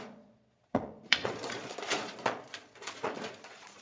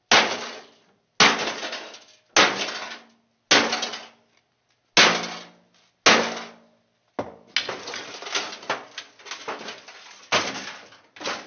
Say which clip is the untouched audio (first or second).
second